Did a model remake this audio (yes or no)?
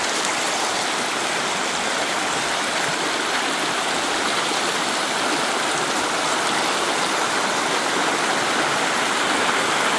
no